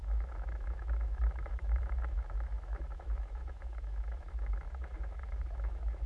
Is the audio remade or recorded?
remade